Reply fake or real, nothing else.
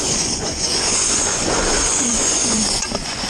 fake